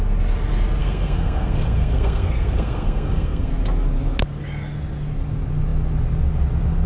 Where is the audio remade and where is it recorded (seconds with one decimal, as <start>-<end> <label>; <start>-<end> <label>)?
0.0-0.8 recorded; 0.8-3.5 remade; 3.5-6.9 recorded